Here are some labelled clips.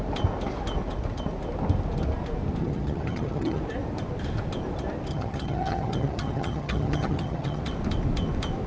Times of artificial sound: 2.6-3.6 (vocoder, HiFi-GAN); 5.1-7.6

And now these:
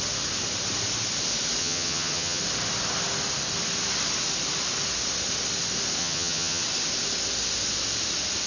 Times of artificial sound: 1.6-2.4 (vocoder, HiFi-GAN); 6.0-6.6

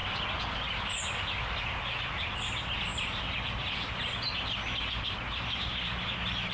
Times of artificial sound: none

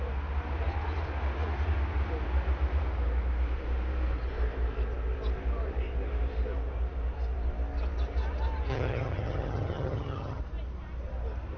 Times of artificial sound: 8.7-10.4 (vocoder, HiFi-GAN)

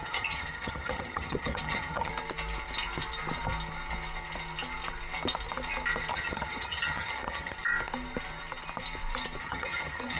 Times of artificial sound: 0.0-2.1 (vocoder, HiFi-GAN); 6.1-7.6; 9.4-10.2